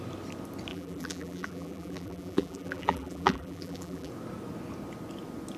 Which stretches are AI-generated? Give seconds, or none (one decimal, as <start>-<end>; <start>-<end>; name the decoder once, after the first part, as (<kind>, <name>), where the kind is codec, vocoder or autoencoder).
0.7-4.1 (vocoder, BigVGAN v2)